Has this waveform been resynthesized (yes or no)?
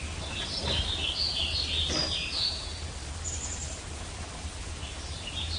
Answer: no